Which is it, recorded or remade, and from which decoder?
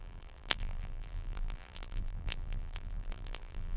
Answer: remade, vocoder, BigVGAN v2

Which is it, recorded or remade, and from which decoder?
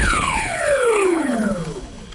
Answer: remade, codec, HILCodec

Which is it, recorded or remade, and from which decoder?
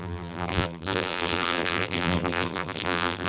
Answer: remade, vocoder, BigVGAN v2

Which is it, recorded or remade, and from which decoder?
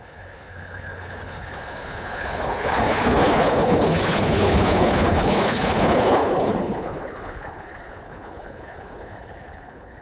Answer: remade, codec, HILCodec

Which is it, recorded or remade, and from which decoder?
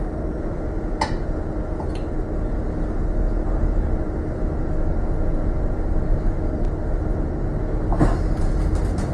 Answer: recorded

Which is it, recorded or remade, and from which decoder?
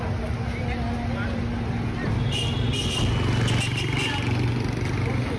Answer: recorded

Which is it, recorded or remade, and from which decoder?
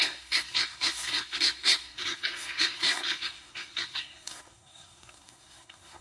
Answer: remade, codec, SNAC